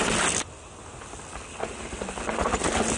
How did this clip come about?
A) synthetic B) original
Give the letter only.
B